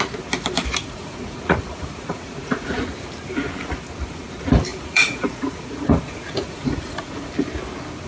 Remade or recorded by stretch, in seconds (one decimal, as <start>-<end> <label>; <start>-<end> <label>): 0.0-0.8 recorded; 0.8-2.8 remade; 2.8-4.7 recorded; 4.7-7.3 remade; 7.3-8.1 recorded